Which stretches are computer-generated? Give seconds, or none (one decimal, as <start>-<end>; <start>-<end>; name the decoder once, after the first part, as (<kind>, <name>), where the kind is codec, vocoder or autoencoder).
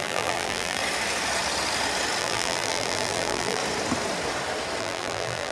0.0-0.8 (vocoder, BigVGAN v2); 2.2-3.6; 4.8-5.5